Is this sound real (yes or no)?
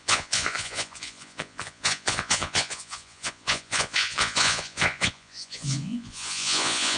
no